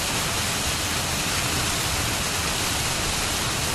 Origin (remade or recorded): recorded